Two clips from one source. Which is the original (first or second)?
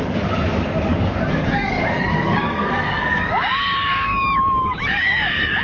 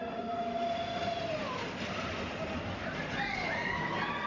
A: second